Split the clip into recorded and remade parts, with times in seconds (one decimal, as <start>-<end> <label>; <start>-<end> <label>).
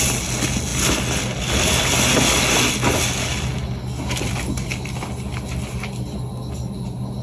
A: 0.0-7.2 recorded